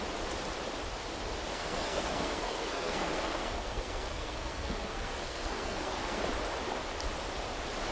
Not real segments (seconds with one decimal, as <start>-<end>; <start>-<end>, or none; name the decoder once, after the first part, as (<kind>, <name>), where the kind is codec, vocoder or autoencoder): 1.5-6.2 (codec, SNAC)